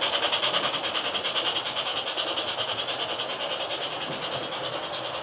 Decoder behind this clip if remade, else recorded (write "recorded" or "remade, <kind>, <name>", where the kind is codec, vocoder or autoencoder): recorded